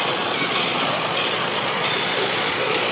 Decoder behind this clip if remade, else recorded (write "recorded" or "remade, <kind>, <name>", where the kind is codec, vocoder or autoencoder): remade, vocoder, Vocos